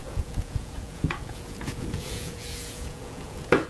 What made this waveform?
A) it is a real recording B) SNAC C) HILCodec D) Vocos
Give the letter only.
D